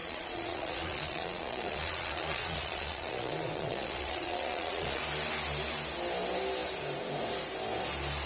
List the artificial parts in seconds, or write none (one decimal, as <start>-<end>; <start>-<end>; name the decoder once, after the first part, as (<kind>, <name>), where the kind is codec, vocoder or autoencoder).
0.0-5.0 (vocoder, Vocos)